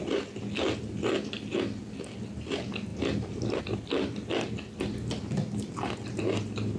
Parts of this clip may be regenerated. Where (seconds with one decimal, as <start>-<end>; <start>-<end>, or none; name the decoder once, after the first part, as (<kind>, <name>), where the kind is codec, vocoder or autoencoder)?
none